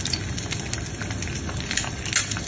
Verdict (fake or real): real